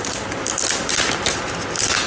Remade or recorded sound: recorded